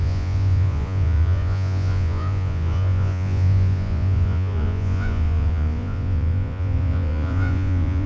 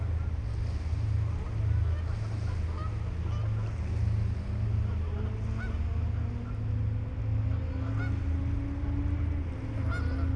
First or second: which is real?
second